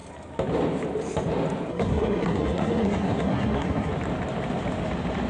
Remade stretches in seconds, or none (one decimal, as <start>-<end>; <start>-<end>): 1.7-3.9